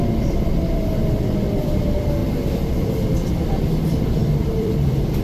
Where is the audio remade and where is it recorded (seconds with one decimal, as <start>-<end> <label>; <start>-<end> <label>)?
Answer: 0.0-5.2 remade